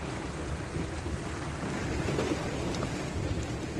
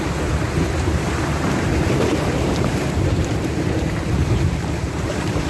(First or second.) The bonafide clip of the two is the first